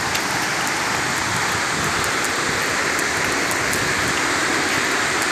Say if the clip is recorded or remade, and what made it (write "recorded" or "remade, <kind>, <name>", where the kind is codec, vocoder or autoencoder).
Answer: recorded